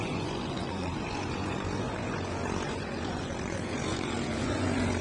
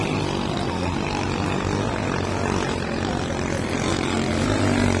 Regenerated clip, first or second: first